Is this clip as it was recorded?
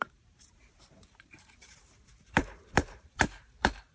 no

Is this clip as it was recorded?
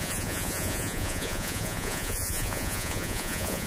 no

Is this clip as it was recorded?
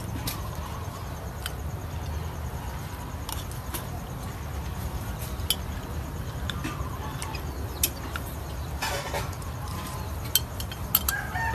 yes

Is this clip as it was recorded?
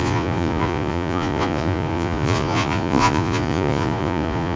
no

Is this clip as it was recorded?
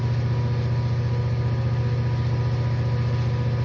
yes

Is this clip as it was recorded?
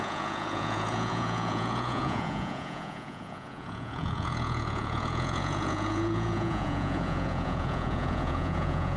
no